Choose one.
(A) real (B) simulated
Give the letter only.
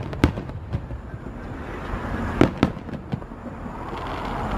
A